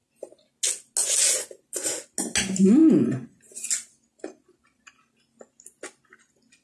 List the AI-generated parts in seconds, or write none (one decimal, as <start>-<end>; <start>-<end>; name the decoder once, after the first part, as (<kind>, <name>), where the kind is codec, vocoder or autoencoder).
none